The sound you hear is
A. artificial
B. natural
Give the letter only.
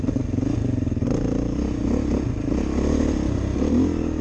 B